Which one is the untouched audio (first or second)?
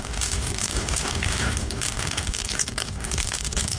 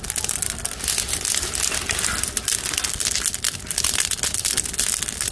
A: second